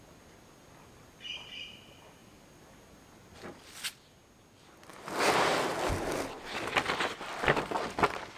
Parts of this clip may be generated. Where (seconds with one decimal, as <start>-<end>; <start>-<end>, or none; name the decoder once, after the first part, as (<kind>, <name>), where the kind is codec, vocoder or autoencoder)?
none